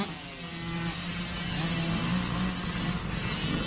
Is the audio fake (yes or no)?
no